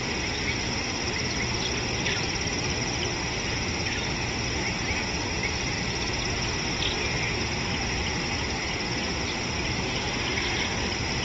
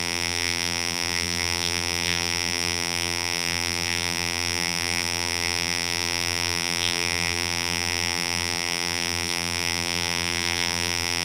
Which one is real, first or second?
first